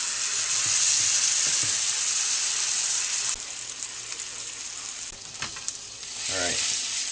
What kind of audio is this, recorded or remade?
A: recorded